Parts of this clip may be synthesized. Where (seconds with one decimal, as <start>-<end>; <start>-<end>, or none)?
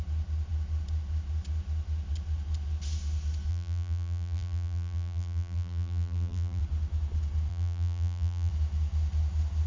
3.5-6.6; 7.5-8.5